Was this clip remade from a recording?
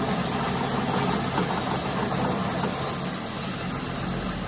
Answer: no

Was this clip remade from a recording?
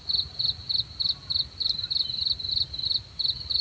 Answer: no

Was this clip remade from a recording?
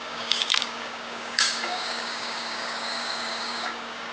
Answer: yes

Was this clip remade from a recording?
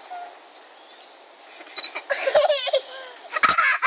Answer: no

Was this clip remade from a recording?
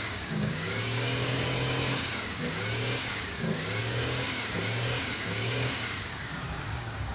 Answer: yes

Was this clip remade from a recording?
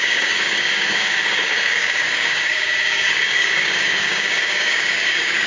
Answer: yes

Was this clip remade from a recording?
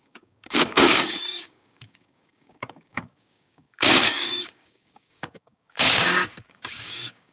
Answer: yes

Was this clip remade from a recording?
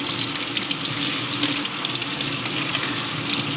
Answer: no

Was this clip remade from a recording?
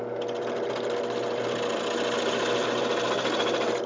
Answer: no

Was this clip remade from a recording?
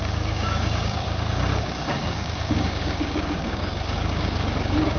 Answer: yes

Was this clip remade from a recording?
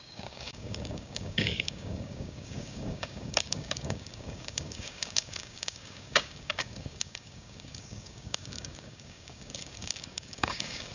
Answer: yes